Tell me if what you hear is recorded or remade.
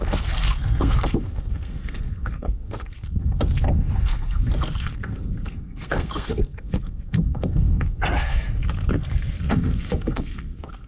remade